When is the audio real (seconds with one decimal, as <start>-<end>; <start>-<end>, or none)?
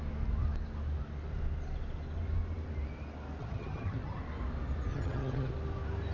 0.0-3.4; 4.2-4.9; 5.5-6.1